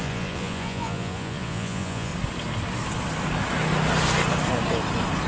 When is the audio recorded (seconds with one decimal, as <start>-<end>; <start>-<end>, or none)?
2.1-5.3